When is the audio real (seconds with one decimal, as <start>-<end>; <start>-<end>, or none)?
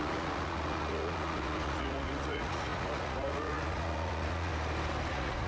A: 4.5-5.1